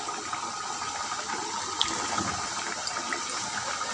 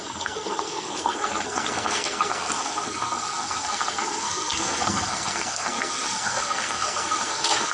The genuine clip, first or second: first